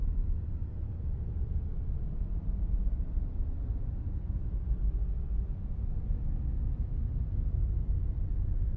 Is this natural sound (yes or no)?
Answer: yes